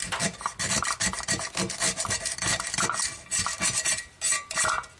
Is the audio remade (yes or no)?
no